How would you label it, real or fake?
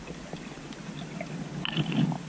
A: real